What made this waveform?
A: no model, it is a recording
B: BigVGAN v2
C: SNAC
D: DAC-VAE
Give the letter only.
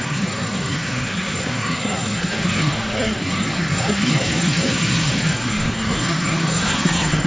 C